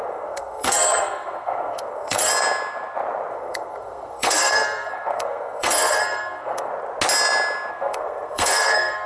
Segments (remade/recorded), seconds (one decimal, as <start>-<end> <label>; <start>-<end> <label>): 0.0-2.3 remade; 2.3-3.3 recorded; 3.3-6.7 remade; 6.7-7.7 recorded; 7.7-9.1 remade